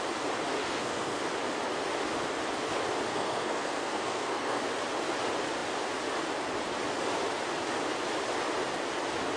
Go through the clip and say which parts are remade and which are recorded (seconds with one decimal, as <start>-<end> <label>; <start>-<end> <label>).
0.0-0.6 recorded; 0.6-1.2 remade; 1.2-3.1 recorded; 3.1-4.6 remade; 4.6-9.4 recorded